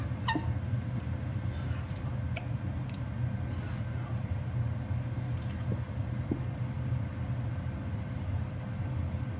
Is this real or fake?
real